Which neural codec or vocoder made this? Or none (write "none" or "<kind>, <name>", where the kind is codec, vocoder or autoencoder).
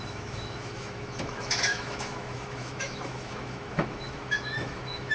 autoencoder, DAC-VAE